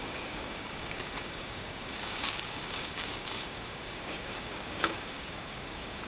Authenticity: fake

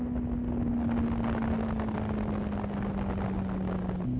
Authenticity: real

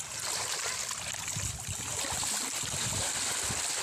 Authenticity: real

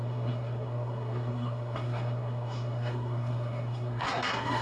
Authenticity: fake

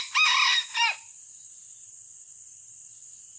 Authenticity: real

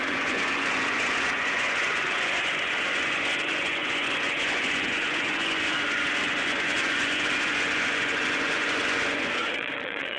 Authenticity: fake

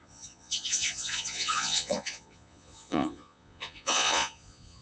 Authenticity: fake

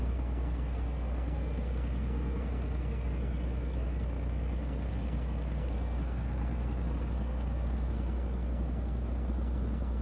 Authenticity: fake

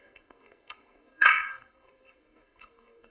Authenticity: fake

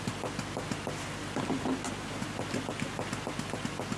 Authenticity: real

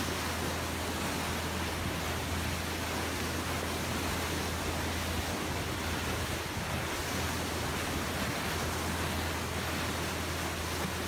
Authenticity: real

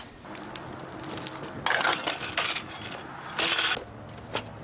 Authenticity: real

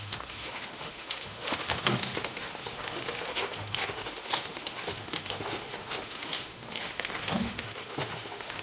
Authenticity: fake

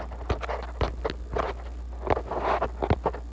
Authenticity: real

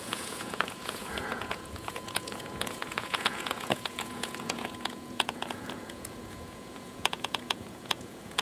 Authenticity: fake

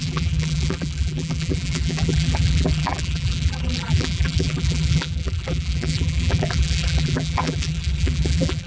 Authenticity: fake